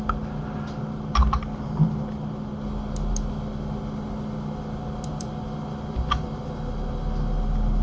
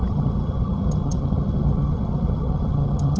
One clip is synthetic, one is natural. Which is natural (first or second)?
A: first